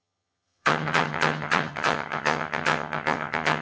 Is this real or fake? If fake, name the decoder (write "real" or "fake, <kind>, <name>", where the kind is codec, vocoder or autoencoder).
fake, vocoder, HiFi-GAN